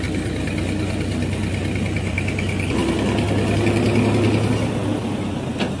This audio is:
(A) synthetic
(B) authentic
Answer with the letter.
B